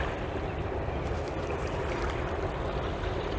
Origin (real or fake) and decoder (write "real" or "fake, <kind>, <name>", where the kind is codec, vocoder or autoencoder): real